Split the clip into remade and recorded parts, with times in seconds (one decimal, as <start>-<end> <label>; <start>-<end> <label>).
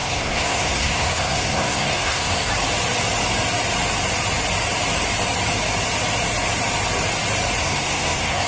0.0-2.5 remade; 2.5-7.6 recorded; 7.6-8.5 remade